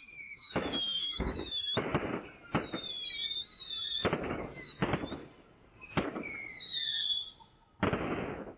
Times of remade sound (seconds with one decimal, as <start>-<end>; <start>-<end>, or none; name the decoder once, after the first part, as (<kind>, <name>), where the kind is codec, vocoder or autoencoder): 0.0-1.9 (autoencoder, DAC-VAE); 4.3-4.8; 7.9-8.6